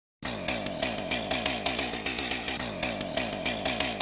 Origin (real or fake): real